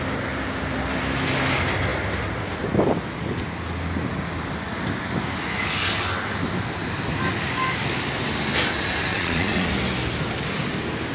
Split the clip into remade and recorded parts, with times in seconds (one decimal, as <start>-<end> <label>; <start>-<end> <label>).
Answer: 0.0-9.1 recorded; 9.1-9.7 remade; 9.7-11.1 recorded